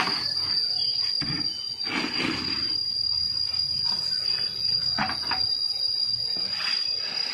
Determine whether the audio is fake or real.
real